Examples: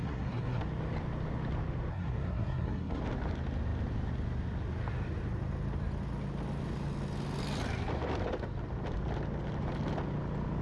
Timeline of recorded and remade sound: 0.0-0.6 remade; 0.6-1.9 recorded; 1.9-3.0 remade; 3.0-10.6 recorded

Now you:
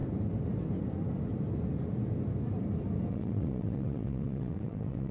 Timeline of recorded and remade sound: 0.0-3.1 recorded; 3.1-5.1 remade

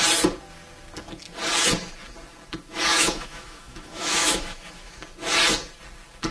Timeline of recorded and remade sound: 0.0-2.9 recorded; 2.9-5.0 remade; 5.0-6.3 recorded

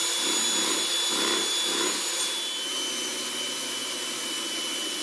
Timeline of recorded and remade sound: 0.0-3.8 recorded; 3.8-4.5 remade; 4.5-5.0 recorded